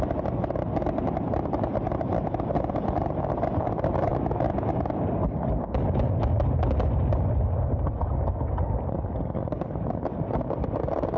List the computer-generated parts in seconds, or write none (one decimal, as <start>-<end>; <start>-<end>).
none